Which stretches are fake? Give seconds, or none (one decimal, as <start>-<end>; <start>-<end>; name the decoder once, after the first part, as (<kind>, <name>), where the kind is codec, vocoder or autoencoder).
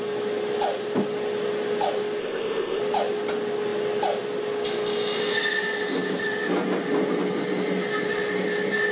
2.2-2.8 (codec, ZipCodec)